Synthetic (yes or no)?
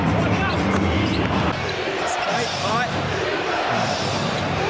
no